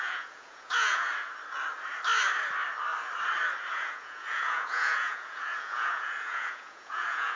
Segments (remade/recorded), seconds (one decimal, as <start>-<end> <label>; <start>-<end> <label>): 0.0-1.1 remade; 1.1-3.7 recorded; 3.7-7.4 remade